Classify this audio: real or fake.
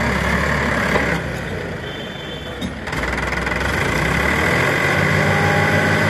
real